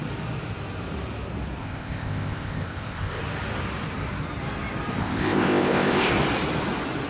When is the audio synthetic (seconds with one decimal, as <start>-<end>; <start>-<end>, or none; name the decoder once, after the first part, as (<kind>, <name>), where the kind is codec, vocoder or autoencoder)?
1.6-3.2 (codec, ZipCodec); 5.0-6.1